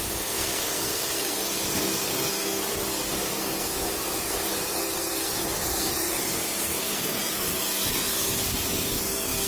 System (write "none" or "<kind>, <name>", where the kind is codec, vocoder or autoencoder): codec, SNAC